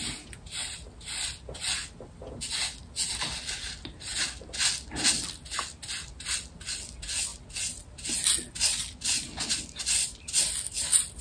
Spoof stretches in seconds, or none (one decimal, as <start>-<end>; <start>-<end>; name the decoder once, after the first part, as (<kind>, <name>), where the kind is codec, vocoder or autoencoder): none

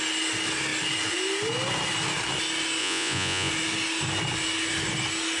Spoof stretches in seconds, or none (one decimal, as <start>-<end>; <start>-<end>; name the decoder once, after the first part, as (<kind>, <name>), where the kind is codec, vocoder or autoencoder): 2.8-3.5 (vocoder, Vocos)

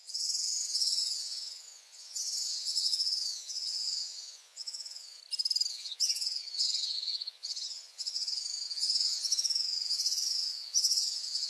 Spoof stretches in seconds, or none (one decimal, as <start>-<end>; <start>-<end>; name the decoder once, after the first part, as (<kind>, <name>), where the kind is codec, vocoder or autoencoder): 0.0-5.2 (vocoder, Vocos); 5.7-11.5

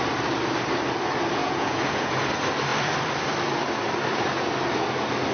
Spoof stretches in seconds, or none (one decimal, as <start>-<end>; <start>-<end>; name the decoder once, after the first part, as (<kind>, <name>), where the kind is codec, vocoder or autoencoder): 1.4-2.2 (vocoder, Vocos)

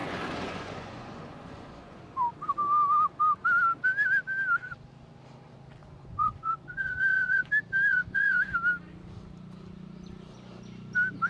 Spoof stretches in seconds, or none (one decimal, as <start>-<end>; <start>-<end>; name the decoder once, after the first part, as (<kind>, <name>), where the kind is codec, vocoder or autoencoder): 0.0-2.0 (vocoder, Vocos); 5.8-7.5; 7.9-8.5

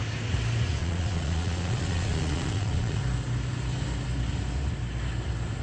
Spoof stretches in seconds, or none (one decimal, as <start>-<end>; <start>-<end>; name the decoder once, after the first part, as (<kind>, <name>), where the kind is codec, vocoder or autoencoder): 0.8-3.0 (vocoder, Vocos)